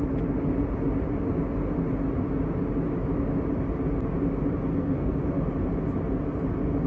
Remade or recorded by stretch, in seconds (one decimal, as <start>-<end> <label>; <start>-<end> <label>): 0.0-4.7 recorded; 4.7-5.2 remade; 5.2-6.9 recorded